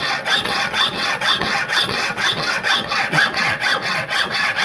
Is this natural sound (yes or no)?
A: no